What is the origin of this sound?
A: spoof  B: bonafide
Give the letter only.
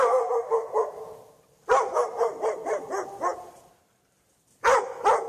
B